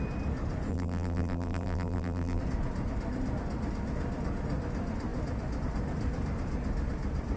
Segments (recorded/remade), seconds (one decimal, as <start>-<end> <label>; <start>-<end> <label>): 0.0-0.7 recorded; 0.7-2.4 remade; 2.4-7.4 recorded